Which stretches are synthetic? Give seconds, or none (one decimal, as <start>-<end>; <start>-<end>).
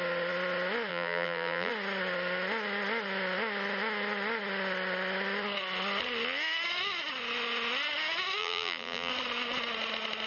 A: 0.9-1.7; 8.4-9.1